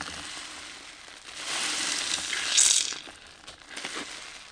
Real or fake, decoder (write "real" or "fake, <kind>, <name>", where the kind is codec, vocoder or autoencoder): real